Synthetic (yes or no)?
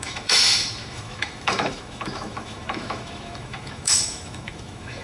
yes